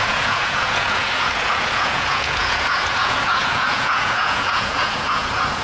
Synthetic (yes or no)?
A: yes